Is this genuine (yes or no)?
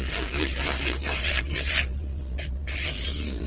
no